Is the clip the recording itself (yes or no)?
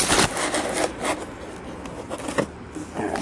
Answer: yes